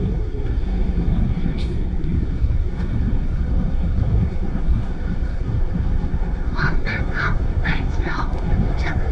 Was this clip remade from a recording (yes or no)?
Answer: yes